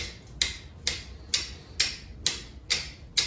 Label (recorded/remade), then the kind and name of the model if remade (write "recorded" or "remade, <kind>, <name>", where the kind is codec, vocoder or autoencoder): recorded